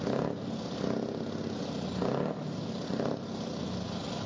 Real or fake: real